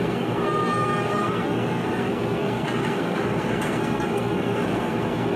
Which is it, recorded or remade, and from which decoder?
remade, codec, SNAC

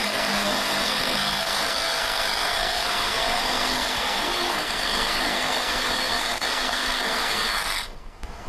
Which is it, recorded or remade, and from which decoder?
remade, codec, SNAC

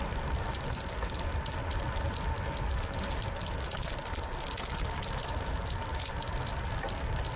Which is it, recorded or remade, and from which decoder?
recorded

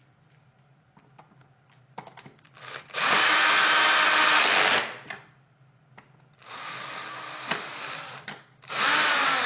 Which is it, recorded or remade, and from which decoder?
recorded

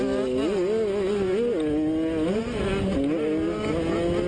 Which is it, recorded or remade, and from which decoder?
recorded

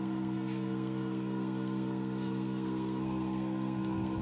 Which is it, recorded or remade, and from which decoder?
remade, codec, SNAC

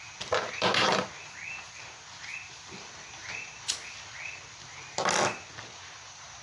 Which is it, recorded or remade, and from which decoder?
recorded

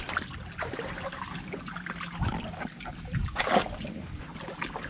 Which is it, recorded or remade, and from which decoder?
recorded